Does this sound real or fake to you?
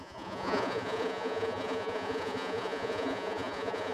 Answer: fake